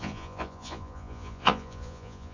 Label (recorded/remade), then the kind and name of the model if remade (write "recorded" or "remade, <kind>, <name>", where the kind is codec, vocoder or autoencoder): remade, vocoder, Vocos